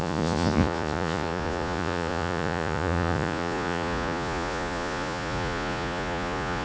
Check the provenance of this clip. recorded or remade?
remade